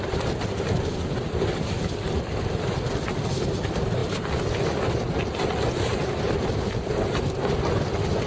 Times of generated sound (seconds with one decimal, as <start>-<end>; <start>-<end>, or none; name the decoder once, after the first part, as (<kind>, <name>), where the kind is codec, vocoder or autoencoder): none